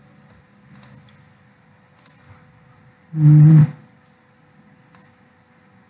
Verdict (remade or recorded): recorded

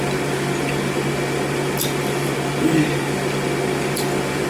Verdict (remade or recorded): recorded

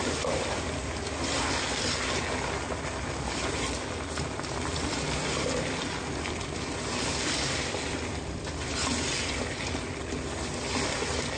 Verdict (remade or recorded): recorded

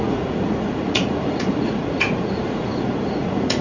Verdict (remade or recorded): remade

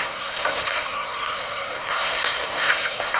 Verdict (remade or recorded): remade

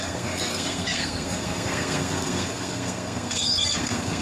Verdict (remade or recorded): remade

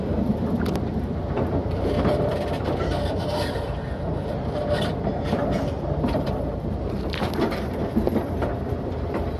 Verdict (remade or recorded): remade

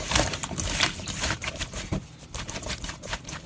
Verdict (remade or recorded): remade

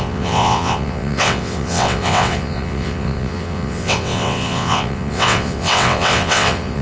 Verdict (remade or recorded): remade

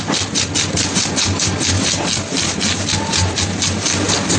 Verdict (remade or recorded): recorded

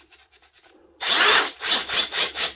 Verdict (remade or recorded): remade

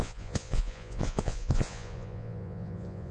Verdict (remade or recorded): remade